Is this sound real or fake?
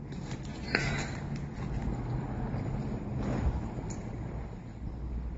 real